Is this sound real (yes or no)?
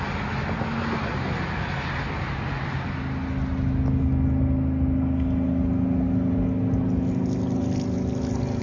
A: yes